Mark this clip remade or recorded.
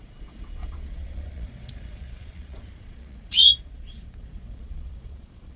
remade